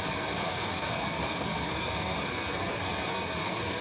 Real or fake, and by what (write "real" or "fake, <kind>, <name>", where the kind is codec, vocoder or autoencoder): fake, codec, SNAC